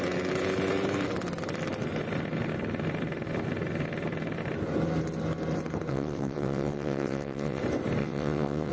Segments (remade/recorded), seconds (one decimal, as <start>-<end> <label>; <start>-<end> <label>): 0.0-5.9 recorded; 5.9-7.6 remade; 7.6-8.0 recorded; 8.0-8.7 remade